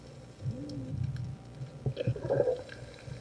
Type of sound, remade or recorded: recorded